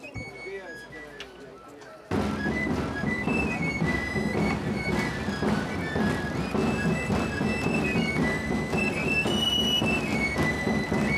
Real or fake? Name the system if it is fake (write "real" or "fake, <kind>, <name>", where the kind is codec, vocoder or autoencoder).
real